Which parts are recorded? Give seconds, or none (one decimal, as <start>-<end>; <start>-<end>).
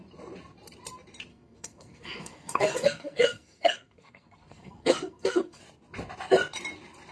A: 0.0-1.3; 5.6-7.1